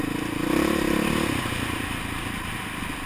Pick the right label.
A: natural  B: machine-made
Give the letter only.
A